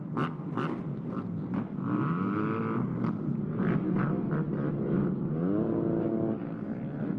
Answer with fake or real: real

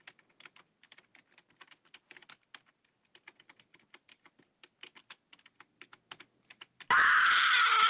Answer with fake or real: real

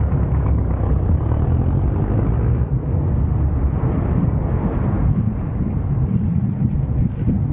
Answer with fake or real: real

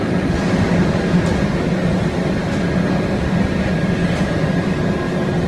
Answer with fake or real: real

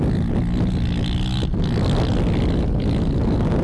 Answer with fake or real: real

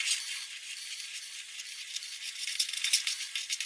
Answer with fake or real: real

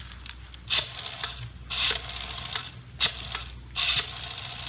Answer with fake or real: real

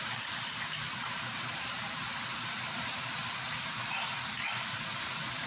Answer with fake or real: fake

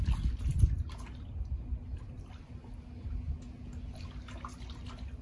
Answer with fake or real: real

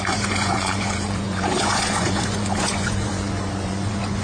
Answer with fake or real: fake